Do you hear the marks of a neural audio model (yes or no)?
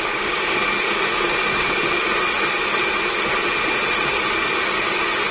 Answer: no